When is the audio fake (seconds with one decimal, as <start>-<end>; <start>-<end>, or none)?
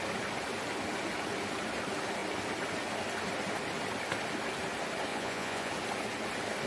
5.1-5.7